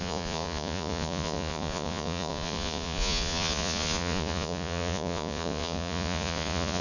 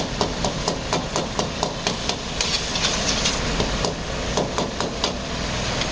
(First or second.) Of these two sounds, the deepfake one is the first